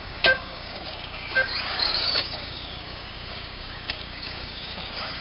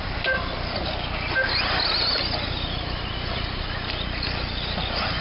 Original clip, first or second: second